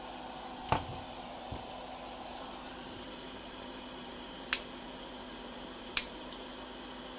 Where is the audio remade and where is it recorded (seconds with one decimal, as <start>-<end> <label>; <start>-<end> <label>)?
0.0-0.9 recorded; 0.9-1.7 remade; 1.7-2.3 recorded; 2.3-6.6 remade; 6.6-7.2 recorded